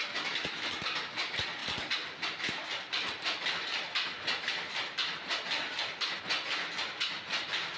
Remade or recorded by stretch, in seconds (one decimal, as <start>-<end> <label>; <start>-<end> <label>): 0.0-7.8 recorded

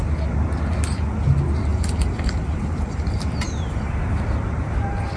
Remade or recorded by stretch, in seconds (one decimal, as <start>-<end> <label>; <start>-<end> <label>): 0.0-1.7 recorded; 1.7-3.9 remade; 3.9-5.2 recorded